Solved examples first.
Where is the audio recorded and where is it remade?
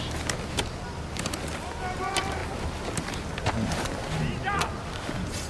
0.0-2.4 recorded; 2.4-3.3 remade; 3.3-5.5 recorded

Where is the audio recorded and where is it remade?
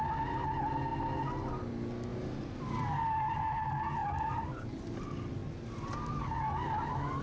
0.0-7.2 recorded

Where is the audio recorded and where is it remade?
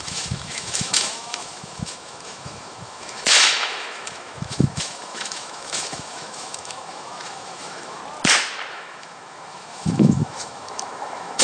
0.0-8.0 remade; 8.0-8.7 recorded; 8.7-11.4 remade